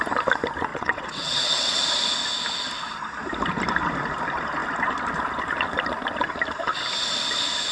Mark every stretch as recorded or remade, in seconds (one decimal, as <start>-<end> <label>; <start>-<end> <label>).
0.0-0.7 recorded; 0.7-1.8 remade; 1.8-7.7 recorded